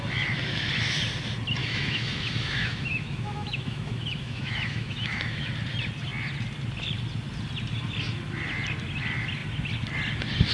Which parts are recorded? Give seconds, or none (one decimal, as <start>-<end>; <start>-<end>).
0.0-1.6; 5.4-10.5